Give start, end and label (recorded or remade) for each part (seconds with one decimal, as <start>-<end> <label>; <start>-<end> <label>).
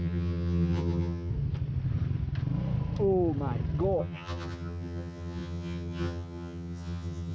0.0-1.3 remade; 1.3-4.0 recorded; 4.0-7.3 remade